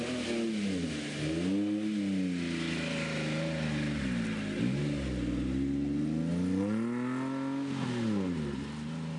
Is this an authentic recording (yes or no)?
yes